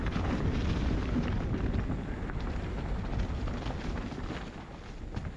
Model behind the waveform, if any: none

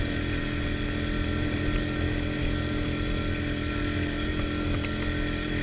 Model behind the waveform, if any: none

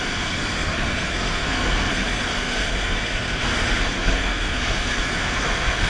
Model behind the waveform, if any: codec, SNAC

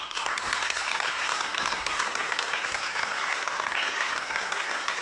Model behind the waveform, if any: codec, SNAC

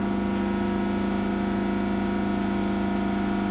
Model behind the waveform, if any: none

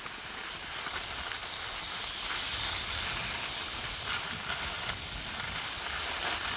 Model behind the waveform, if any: none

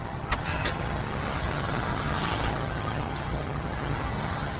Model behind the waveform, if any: vocoder, HiFi-GAN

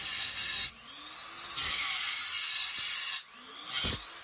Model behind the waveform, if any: none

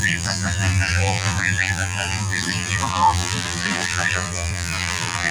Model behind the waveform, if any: vocoder, BigVGAN v2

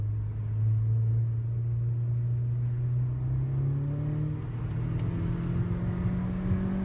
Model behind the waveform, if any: none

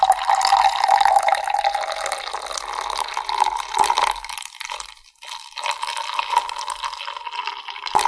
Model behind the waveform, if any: none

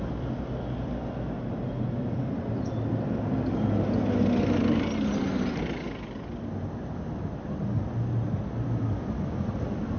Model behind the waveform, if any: none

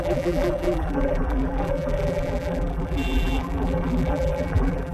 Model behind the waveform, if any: vocoder, BigVGAN v2